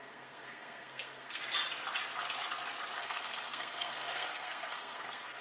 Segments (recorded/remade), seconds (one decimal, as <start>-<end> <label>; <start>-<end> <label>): 0.0-1.4 remade; 1.4-3.0 recorded; 3.0-5.4 remade